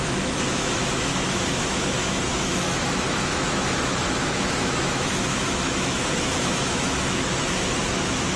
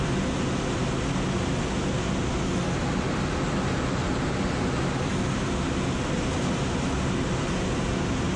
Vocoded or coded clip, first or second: first